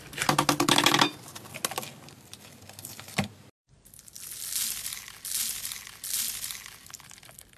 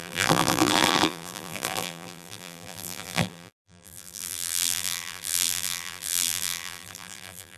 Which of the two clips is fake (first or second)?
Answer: second